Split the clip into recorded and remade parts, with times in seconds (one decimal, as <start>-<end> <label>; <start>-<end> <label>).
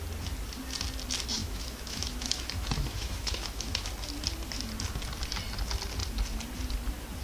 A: 0.0-1.4 recorded; 1.4-3.9 remade; 3.9-7.2 recorded